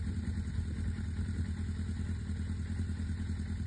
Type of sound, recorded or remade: recorded